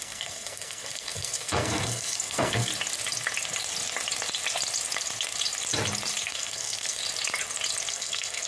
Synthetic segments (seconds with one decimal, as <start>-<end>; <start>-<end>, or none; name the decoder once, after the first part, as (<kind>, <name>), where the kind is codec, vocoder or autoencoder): 0.0-2.7 (codec, SNAC); 6.2-7.0; 7.9-8.5

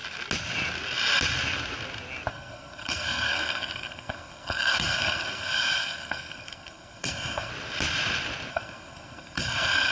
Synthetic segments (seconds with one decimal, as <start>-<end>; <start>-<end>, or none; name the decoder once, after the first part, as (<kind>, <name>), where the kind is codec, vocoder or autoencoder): 2.3-7.5 (codec, SNAC); 8.5-9.9

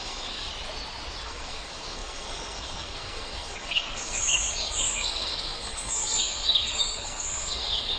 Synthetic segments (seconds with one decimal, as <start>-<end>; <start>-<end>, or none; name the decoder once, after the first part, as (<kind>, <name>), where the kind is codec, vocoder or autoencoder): 0.0-0.5 (codec, SNAC); 1.2-8.0

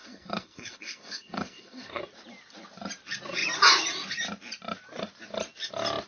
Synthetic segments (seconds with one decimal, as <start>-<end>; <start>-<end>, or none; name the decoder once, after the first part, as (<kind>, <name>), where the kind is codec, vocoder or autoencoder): 0.0-2.0 (codec, SNAC)

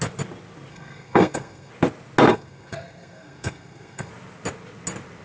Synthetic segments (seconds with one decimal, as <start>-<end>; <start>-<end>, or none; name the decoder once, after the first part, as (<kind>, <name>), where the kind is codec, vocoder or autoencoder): 0.7-1.7 (codec, SNAC); 2.3-4.1

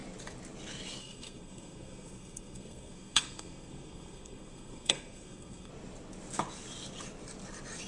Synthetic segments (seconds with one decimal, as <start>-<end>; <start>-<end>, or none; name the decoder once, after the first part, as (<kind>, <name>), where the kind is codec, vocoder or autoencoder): 1.0-5.7 (codec, SNAC)

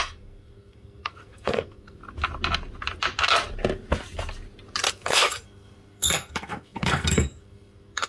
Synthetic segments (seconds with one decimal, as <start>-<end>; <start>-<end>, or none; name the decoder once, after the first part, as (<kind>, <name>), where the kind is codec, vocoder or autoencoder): 0.0-2.0 (codec, SNAC); 4.9-8.1

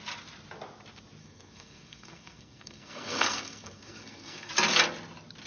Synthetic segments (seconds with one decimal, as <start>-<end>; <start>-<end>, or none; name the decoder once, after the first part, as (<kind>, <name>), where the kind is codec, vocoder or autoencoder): 1.2-4.5 (codec, SNAC)